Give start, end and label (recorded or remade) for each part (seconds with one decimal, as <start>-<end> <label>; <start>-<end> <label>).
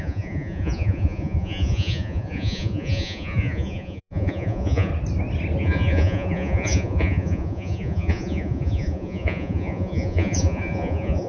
0.0-4.9 remade; 4.9-5.6 recorded; 5.6-11.3 remade